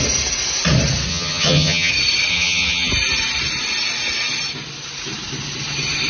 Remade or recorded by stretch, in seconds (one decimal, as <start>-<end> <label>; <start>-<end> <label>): 0.0-1.1 recorded; 1.1-1.9 remade; 1.9-2.3 recorded; 2.3-2.9 remade; 2.9-6.1 recorded

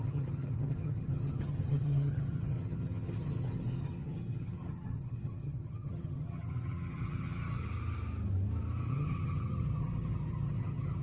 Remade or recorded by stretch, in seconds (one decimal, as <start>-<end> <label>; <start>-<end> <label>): 0.0-7.6 remade; 7.6-8.9 recorded; 8.9-11.0 remade

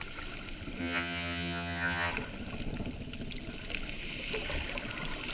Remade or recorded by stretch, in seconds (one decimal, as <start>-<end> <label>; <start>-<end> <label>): 0.0-0.8 recorded; 0.8-2.1 remade; 2.1-5.3 recorded

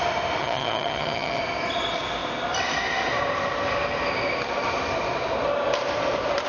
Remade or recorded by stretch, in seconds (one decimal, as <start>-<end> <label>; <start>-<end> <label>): 0.0-0.4 recorded; 0.4-1.4 remade; 1.4-6.5 recorded

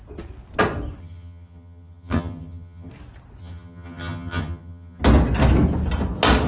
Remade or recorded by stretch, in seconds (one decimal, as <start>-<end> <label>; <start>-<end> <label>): 0.0-1.0 recorded; 1.0-2.9 remade; 2.9-3.4 recorded; 3.4-5.0 remade; 5.0-6.5 recorded